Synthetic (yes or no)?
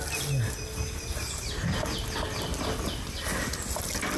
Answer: no